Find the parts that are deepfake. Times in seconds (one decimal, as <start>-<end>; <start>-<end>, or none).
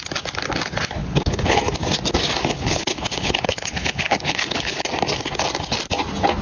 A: 1.0-1.6; 2.5-4.9